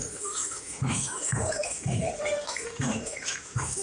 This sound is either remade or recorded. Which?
remade